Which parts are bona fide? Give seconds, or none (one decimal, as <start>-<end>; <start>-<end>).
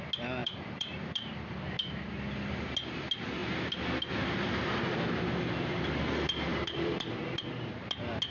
0.0-0.4; 1.6-6.5; 7.4-8.3